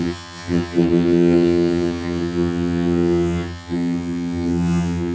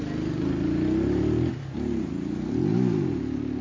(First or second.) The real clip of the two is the second